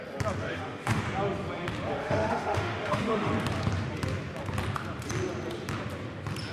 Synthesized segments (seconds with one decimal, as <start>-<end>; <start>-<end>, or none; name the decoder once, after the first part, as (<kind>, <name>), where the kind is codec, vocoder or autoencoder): 0.4-1.0 (autoencoder, DAC-VAE); 2.0-3.3